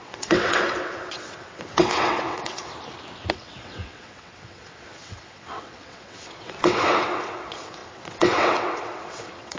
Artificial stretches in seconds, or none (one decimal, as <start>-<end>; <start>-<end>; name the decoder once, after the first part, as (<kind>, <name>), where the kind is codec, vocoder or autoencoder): 0.0-2.7 (vocoder, WaveNeXt); 3.3-9.6